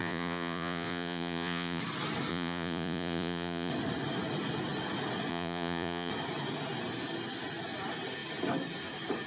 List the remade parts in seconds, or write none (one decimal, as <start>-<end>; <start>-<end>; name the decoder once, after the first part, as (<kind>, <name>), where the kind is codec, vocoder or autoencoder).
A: 0.0-1.8 (vocoder, Vocos); 2.3-3.7; 5.3-6.1